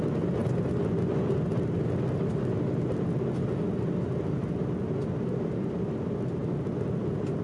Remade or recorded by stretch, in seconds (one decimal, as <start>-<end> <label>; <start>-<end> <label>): 0.0-7.4 recorded